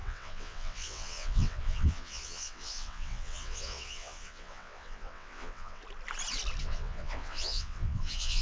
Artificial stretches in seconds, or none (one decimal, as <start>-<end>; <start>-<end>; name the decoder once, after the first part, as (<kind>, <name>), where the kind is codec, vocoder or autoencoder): 0.0-5.8 (vocoder, WaveNeXt); 6.6-8.4